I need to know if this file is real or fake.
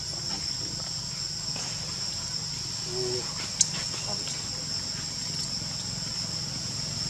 real